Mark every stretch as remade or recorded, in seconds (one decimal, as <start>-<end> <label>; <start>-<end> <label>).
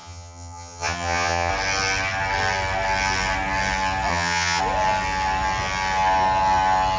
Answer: 0.0-1.5 remade; 1.5-4.1 recorded; 4.1-4.6 remade; 4.6-7.0 recorded